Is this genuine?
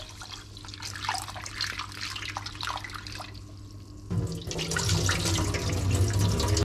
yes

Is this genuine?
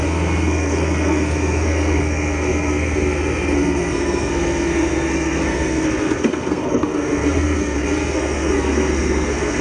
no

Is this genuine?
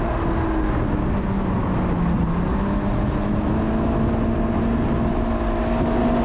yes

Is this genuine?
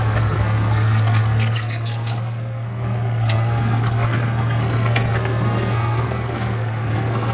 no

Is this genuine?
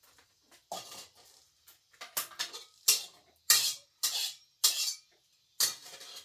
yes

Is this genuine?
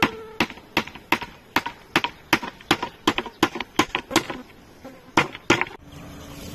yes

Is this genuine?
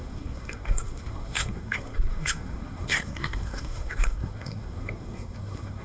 no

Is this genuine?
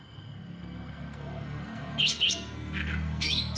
no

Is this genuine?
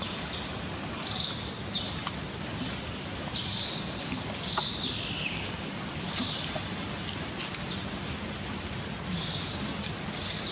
yes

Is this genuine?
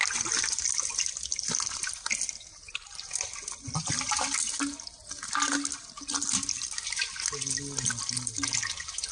yes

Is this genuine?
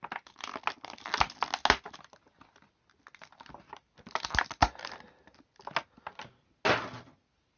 yes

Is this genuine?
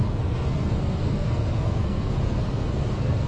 no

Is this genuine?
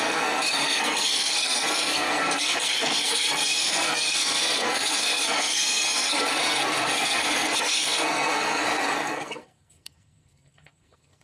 no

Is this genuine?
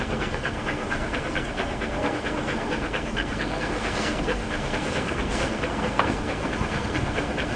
no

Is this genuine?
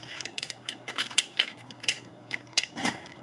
no